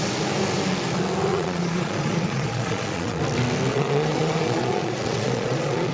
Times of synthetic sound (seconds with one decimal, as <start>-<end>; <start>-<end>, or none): 1.3-3.2; 3.7-5.9